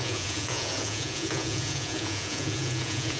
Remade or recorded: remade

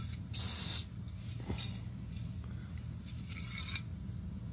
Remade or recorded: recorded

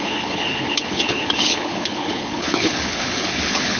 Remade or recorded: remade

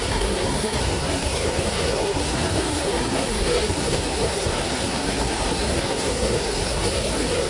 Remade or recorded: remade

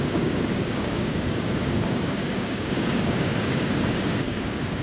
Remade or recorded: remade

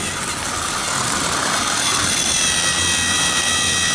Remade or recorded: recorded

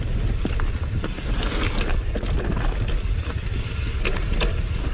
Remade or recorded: recorded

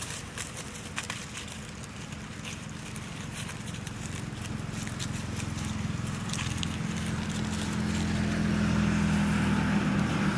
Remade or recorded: recorded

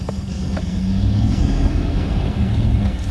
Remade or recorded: remade